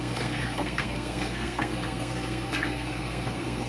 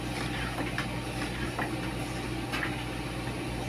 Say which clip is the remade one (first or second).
first